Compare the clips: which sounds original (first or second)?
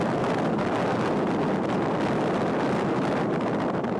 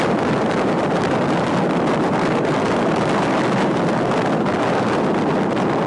first